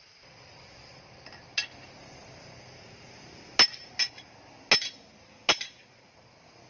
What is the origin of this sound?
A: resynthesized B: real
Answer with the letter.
B